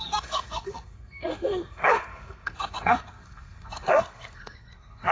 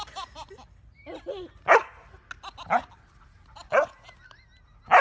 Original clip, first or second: second